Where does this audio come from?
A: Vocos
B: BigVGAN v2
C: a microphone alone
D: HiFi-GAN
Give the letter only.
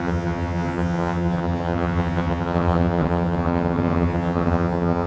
D